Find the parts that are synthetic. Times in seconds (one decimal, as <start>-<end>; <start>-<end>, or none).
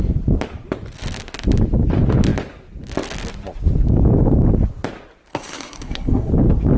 5.3-6.3